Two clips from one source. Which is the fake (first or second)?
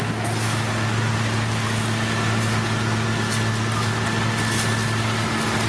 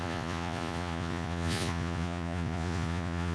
second